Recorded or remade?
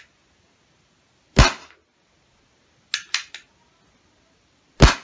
recorded